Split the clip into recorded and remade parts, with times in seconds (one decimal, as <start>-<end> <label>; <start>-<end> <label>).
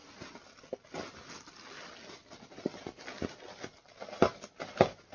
0.0-5.1 recorded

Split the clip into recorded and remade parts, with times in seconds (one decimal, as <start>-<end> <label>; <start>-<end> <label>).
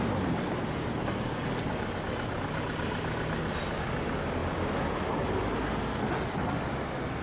0.0-7.2 recorded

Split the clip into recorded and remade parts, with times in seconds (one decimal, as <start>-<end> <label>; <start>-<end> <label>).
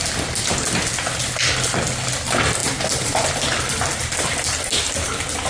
0.0-5.5 recorded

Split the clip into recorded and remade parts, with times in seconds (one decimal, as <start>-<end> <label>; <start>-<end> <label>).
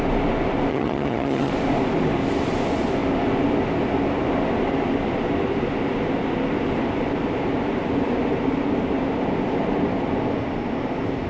0.0-0.7 recorded; 0.7-1.5 remade; 1.5-11.3 recorded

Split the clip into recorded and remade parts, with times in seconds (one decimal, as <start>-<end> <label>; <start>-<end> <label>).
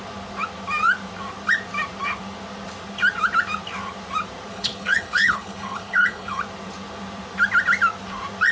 0.0-4.5 recorded; 4.5-6.4 remade; 6.4-8.5 recorded